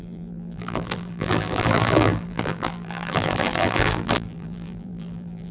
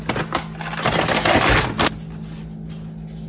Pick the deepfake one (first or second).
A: first